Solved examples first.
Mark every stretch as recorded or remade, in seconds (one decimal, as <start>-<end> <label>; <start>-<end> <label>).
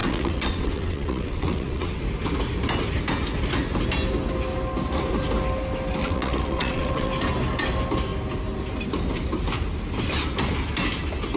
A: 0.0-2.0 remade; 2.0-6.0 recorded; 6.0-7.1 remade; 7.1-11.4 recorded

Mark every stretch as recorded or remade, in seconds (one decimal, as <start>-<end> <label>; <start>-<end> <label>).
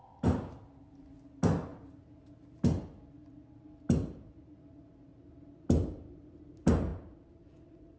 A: 0.0-8.0 recorded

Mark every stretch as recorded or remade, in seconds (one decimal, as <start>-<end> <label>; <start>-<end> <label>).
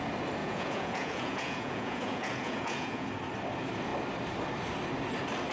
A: 0.0-0.4 recorded; 0.4-3.1 remade; 3.1-5.5 recorded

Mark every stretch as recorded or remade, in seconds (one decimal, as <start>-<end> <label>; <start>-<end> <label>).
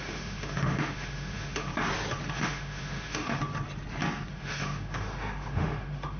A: 0.0-1.7 remade; 1.7-2.3 recorded; 2.3-3.4 remade; 3.4-4.3 recorded; 4.3-6.2 remade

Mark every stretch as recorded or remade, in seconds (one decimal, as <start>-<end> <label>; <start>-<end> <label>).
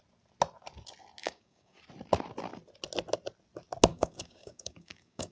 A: 0.0-1.2 recorded; 1.2-1.8 remade; 1.8-3.9 recorded; 3.9-5.3 remade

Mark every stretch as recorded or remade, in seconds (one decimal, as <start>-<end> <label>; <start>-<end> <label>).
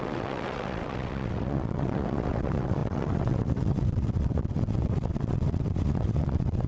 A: 0.0-6.7 remade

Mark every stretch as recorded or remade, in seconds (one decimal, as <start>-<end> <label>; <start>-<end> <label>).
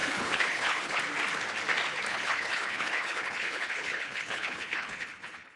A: 0.0-1.0 remade; 1.0-2.1 recorded; 2.1-5.6 remade